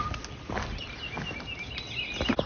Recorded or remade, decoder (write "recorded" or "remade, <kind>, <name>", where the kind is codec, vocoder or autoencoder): recorded